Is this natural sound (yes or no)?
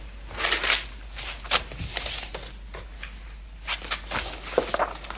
yes